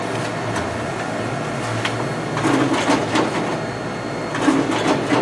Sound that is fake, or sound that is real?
real